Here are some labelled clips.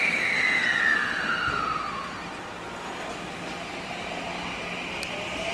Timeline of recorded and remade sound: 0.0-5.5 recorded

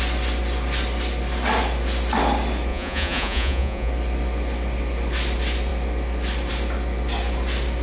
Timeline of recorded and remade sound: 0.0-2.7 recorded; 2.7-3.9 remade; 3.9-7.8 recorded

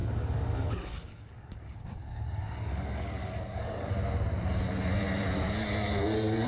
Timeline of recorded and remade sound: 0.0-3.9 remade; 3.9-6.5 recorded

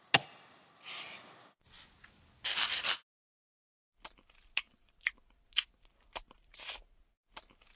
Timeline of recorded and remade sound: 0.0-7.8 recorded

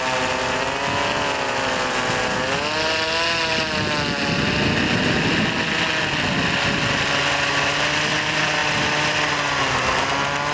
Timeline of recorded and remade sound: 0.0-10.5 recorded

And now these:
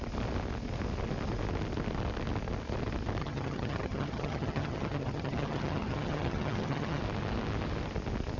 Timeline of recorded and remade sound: 0.0-3.2 recorded; 3.2-7.0 remade; 7.0-8.4 recorded

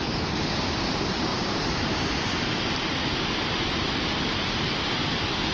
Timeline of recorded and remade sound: 0.0-5.5 recorded